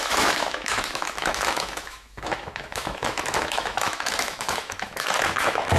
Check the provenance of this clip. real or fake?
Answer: fake